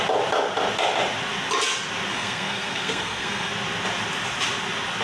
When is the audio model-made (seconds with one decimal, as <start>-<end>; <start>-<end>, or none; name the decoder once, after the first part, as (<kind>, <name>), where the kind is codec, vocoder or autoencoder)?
2.1-3.5 (codec, SNAC)